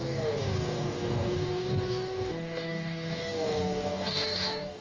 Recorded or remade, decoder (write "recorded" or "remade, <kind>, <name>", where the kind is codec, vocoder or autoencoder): remade, codec, DAC